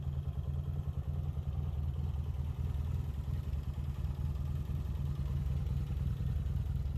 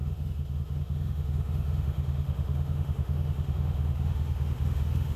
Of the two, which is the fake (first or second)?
second